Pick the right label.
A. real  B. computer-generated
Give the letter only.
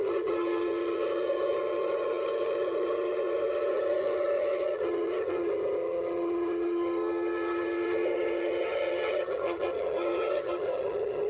B